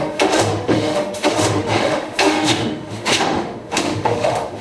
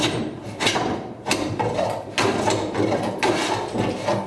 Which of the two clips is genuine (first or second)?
second